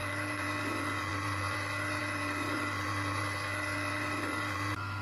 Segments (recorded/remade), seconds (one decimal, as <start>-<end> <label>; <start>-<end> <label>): 0.0-5.0 remade